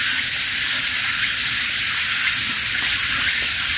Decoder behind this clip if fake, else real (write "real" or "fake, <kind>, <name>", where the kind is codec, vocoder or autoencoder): real